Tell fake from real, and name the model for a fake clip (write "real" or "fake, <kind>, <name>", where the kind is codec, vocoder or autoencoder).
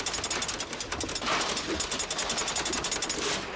real